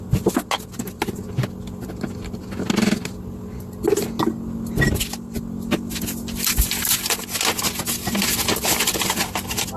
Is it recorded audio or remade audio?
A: recorded